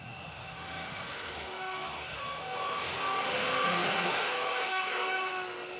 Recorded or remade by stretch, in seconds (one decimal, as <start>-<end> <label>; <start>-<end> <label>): 0.0-5.8 remade